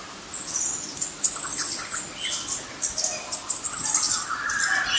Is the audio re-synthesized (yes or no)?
no